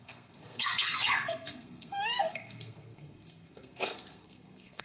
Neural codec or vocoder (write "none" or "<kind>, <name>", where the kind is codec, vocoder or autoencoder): codec, SNAC